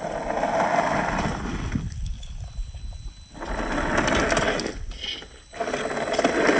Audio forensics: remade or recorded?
recorded